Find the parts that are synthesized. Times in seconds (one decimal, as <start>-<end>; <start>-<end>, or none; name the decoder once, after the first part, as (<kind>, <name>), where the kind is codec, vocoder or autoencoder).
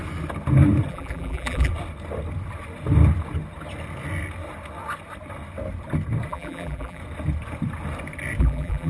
0.9-1.7 (vocoder, BigVGAN v2); 6.3-7.0; 8.4-8.9